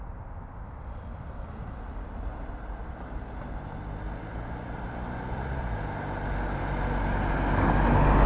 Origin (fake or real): real